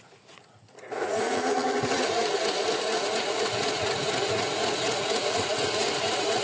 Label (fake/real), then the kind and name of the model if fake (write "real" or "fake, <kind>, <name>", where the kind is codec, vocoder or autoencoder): fake, vocoder, Vocos